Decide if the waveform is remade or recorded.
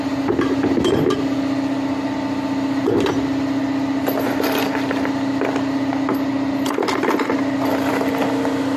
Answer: recorded